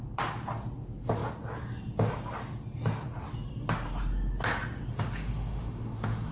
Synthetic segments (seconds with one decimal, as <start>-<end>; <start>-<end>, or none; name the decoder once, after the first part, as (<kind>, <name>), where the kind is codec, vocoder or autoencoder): 4.9-6.3 (autoencoder, DAC-VAE)